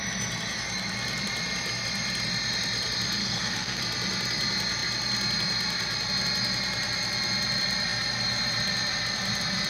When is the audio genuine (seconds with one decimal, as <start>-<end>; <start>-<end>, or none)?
0.0-3.2; 3.8-9.7